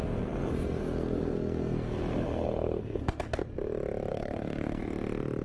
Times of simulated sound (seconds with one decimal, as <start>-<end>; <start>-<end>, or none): 0.0-3.2; 4.1-4.8